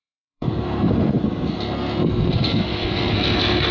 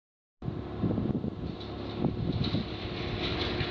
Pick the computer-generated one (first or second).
first